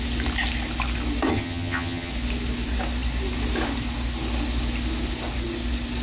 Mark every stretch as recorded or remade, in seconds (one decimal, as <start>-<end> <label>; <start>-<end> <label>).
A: 0.0-1.3 recorded; 1.3-2.1 remade; 2.1-6.0 recorded